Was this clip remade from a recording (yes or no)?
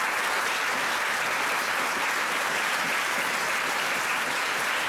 yes